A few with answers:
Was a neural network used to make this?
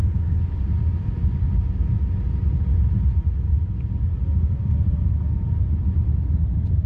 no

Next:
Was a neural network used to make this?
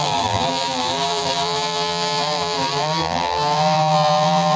yes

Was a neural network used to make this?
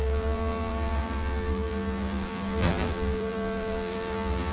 yes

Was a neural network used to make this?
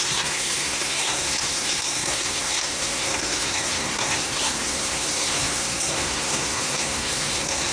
yes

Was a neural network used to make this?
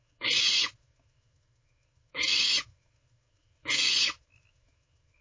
yes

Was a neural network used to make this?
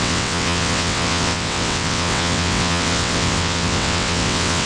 yes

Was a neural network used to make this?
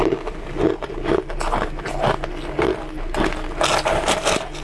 no